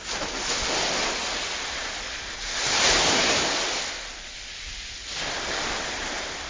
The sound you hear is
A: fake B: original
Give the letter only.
B